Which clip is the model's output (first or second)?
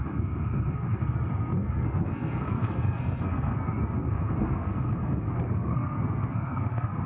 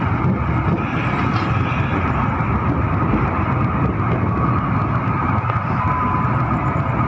first